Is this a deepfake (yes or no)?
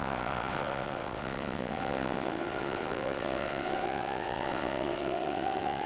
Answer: yes